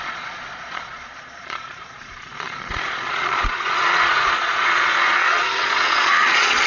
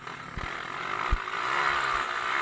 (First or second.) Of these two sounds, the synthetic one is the first